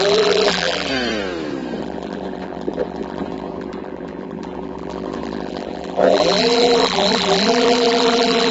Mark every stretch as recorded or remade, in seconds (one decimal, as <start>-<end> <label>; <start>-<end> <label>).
0.0-0.9 remade; 0.9-1.8 recorded; 1.8-8.5 remade